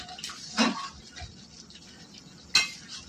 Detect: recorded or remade recorded